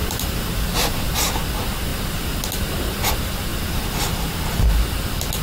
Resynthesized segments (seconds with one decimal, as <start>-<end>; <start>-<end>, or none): 0.0-1.3